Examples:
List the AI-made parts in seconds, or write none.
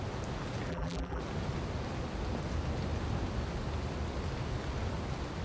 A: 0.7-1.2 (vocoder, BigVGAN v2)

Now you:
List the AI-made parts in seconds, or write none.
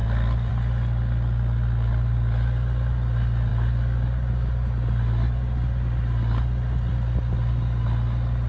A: none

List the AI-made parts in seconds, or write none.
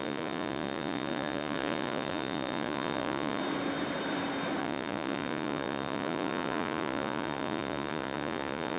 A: 0.0-3.4 (vocoder, Vocos); 4.6-8.8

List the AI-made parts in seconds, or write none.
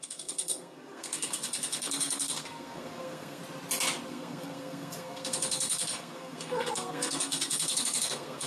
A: 0.0-3.4 (codec, SNAC); 4.1-8.5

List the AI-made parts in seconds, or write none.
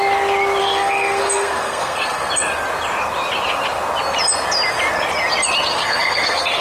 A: 0.6-2.3 (codec, SNAC); 5.7-6.6